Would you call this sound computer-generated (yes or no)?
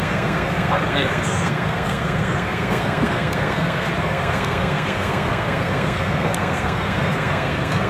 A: yes